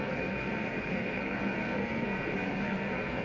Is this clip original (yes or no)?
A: no